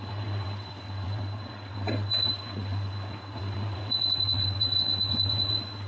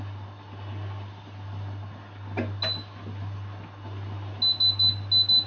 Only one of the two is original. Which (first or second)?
second